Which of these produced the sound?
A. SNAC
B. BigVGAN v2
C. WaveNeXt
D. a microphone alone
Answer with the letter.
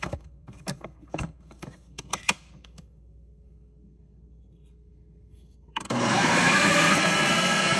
A